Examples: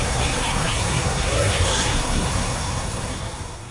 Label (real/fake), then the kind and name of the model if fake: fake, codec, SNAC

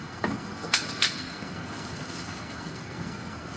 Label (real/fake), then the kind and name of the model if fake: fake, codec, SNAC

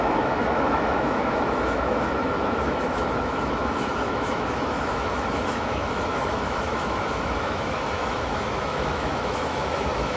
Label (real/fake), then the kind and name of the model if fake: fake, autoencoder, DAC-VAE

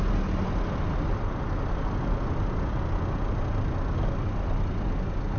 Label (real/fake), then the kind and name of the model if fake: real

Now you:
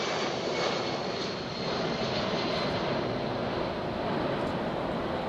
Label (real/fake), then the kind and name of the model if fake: real